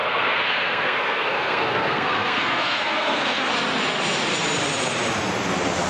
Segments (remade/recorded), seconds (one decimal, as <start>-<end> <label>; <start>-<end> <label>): 0.0-3.5 remade; 3.5-5.9 recorded

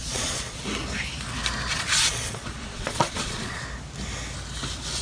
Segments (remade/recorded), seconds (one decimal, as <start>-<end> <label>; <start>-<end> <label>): 0.0-0.6 remade; 0.6-1.7 recorded; 1.7-3.6 remade; 3.6-5.0 recorded